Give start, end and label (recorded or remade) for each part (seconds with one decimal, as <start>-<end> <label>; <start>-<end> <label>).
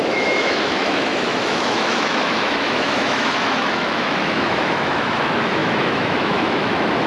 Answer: 0.0-7.1 remade